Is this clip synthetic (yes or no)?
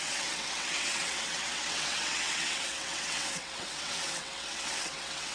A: yes